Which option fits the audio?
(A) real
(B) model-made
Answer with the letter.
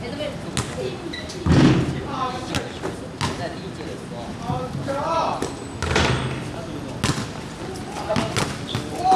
A